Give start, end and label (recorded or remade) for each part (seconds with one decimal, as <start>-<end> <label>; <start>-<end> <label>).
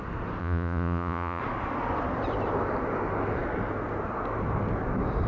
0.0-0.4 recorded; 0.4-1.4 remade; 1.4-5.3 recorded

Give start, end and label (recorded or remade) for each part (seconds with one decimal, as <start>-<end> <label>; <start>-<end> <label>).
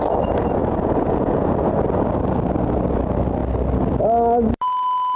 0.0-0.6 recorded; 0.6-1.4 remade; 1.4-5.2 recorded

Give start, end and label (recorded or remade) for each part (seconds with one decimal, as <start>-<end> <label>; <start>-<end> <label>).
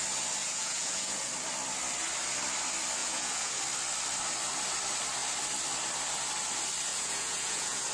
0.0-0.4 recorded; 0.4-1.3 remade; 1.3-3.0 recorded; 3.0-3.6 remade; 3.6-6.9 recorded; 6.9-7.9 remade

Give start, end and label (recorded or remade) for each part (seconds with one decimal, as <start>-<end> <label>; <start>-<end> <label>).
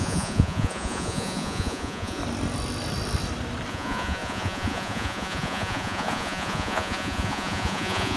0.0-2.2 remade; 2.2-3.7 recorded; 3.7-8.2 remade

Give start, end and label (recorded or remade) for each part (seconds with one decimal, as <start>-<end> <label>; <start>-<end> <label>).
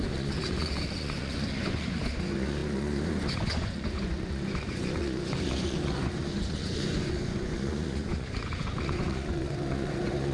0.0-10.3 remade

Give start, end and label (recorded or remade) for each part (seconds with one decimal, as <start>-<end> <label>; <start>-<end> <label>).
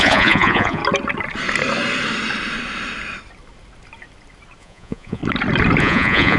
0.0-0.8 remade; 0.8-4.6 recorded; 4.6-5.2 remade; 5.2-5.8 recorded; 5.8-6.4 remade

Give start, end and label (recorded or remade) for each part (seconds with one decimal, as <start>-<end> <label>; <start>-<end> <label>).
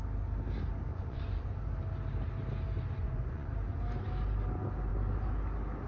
0.0-0.9 recorded; 0.9-1.5 remade; 1.5-3.0 recorded; 3.0-3.5 remade; 3.5-5.9 recorded